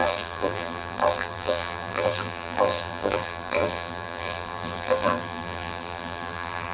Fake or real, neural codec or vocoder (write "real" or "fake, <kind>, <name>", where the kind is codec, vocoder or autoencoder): fake, vocoder, BigVGAN v2